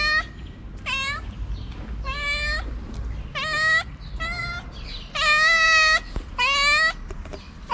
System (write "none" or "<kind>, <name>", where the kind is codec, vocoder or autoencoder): none